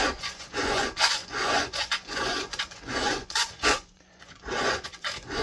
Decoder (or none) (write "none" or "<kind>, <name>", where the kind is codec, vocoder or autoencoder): vocoder, Vocos